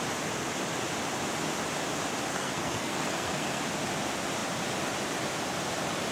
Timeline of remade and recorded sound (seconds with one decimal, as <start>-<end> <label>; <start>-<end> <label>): 0.0-2.3 recorded; 2.3-3.6 remade; 3.6-6.1 recorded